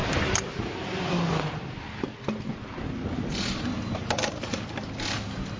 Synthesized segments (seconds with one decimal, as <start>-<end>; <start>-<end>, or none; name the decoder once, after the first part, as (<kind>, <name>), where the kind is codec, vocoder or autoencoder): none